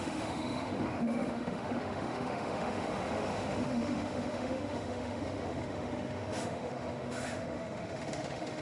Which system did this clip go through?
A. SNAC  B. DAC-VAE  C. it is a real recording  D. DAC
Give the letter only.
B